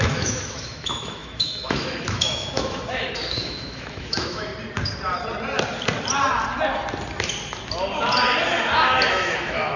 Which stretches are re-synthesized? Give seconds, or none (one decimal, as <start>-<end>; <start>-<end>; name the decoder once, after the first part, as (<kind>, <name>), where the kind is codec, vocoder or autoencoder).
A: 0.0-4.5 (autoencoder, DAC-VAE); 9.1-9.8